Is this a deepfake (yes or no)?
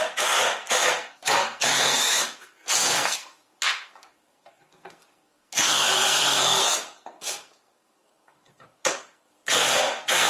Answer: yes